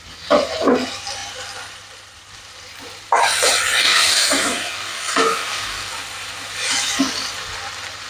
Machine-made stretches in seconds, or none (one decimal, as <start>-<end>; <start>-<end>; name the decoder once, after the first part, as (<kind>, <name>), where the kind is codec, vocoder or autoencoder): 3.8-5.9 (codec, DAC)